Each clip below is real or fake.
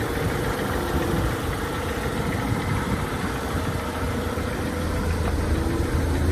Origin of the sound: real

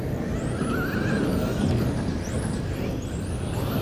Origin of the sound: real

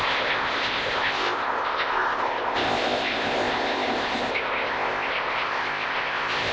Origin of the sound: fake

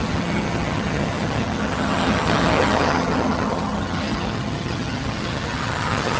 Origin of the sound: fake